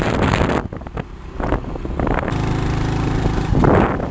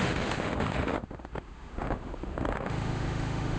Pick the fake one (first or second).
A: second